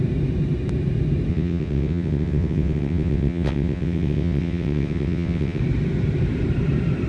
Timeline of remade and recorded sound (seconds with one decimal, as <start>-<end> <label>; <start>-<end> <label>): 0.0-1.3 recorded; 1.3-5.6 remade; 5.6-7.1 recorded